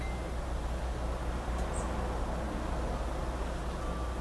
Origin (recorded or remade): recorded